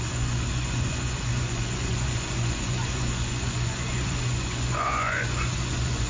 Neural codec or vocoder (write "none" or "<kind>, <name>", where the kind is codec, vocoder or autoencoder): vocoder, Vocos